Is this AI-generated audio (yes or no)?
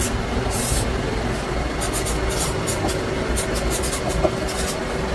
no